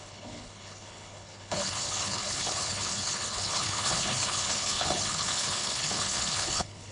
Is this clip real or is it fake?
fake